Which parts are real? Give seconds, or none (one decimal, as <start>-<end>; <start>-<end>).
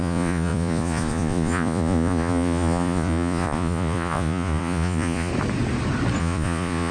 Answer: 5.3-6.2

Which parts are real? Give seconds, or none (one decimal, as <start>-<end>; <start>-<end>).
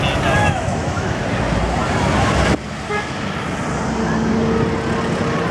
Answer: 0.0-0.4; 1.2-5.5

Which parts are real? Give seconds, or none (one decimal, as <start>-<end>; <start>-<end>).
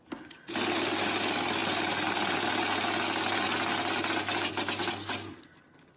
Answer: 0.0-6.0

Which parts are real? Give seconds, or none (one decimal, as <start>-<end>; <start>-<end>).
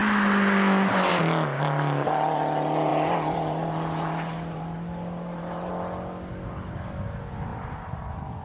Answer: 0.0-2.9; 5.7-7.5; 8.0-8.4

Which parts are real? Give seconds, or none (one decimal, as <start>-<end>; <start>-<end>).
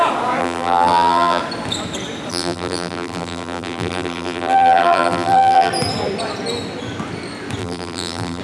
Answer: 0.0-0.4; 1.4-2.3; 5.7-7.6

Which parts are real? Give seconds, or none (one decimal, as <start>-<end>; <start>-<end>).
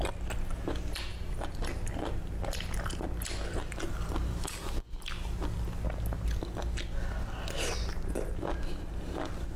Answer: 0.0-1.1; 2.2-9.6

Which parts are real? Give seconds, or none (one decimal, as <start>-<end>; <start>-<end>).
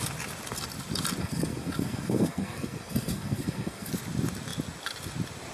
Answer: 0.0-1.2; 3.9-5.5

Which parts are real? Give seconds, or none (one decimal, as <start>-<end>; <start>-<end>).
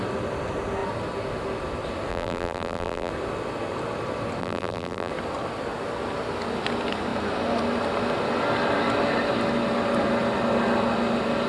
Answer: 0.0-2.1; 3.1-4.4; 5.1-11.5